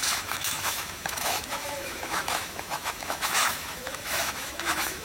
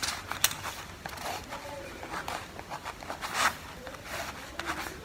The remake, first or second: first